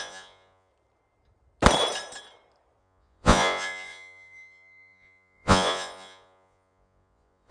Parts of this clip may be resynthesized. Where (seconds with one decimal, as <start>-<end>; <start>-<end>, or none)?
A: 0.0-0.7; 2.8-7.5